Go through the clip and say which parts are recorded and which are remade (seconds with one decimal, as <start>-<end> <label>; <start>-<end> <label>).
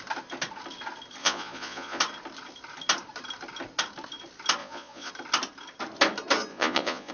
0.0-1.2 recorded; 1.2-2.0 remade; 2.0-4.6 recorded; 4.6-5.1 remade; 5.1-6.5 recorded; 6.5-7.1 remade